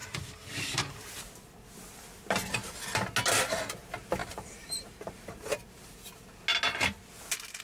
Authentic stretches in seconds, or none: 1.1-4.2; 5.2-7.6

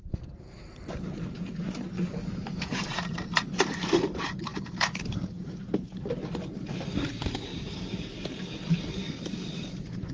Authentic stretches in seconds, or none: 6.2-7.0

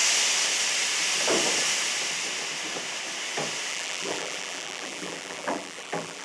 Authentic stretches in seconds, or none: 0.0-3.7

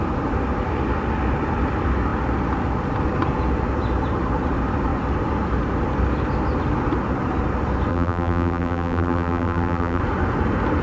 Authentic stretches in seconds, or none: 0.0-7.9; 10.0-10.8

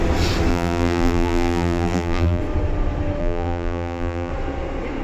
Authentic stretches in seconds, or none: 0.0-0.5; 2.4-3.2; 4.3-5.0

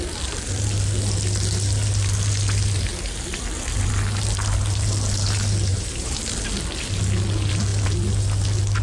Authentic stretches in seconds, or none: 0.0-5.7; 6.2-8.8

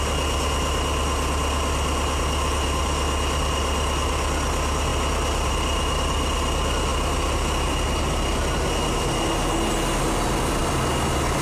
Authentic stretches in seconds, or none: 0.0-11.4

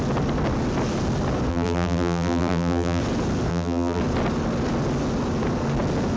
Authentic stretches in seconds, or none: 0.0-1.5; 3.0-3.5; 4.0-6.2